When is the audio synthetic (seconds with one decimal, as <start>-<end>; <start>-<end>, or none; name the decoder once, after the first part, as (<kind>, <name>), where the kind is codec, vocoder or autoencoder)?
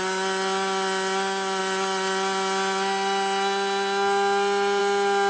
none